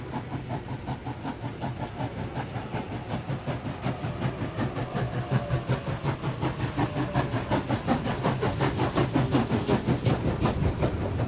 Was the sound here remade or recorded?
recorded